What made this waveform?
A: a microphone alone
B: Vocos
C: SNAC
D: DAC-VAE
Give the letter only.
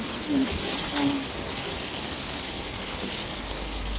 C